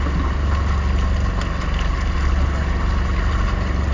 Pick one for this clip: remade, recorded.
recorded